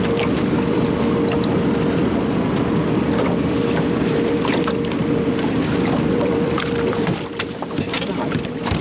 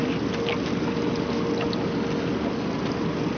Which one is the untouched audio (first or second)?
second